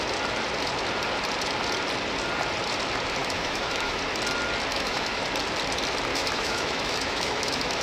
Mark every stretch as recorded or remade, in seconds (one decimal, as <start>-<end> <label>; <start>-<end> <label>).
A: 0.0-3.2 recorded; 3.2-4.0 remade; 4.0-4.7 recorded; 4.7-5.2 remade; 5.2-6.1 recorded; 6.1-7.8 remade